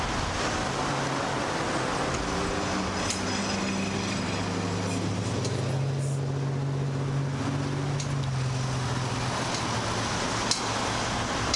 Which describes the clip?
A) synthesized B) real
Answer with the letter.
B